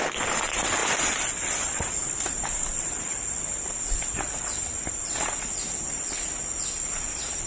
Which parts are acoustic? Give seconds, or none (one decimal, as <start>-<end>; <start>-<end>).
0.0-7.5